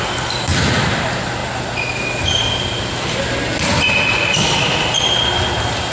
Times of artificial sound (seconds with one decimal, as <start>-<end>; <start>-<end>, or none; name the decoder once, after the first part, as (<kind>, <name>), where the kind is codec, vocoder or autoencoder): none